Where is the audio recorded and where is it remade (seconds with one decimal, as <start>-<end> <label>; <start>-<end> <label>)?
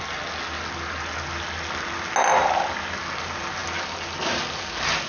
0.0-5.1 recorded